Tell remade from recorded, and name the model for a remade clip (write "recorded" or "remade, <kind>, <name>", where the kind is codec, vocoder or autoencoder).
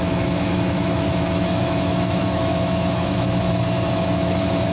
remade, autoencoder, DAC-VAE